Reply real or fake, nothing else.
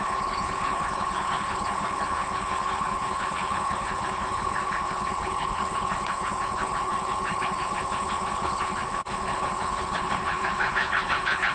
fake